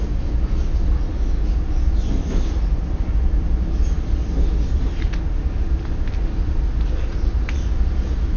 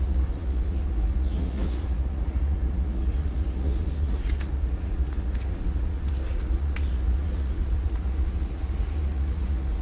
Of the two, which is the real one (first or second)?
first